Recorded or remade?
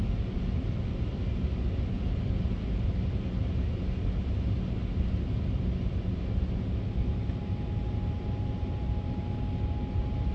recorded